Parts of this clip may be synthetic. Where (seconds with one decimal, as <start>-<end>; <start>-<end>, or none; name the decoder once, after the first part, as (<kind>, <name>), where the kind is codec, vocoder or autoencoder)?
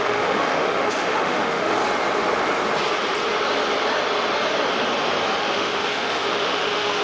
0.0-1.8 (autoencoder, DAC-VAE); 5.4-7.0